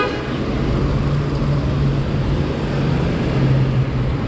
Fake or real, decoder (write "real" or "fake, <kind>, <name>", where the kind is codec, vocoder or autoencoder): real